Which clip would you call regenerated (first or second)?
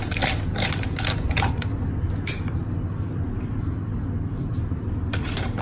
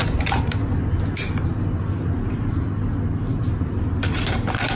first